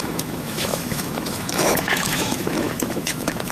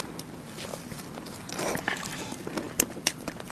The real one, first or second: second